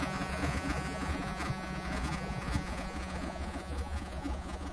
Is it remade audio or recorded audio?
remade